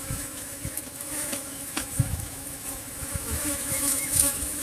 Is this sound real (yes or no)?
no